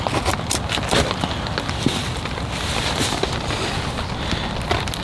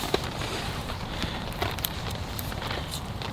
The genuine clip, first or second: first